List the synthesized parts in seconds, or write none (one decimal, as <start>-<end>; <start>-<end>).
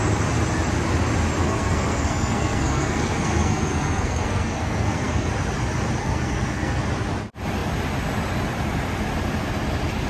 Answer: 1.4-5.3; 6.0-6.8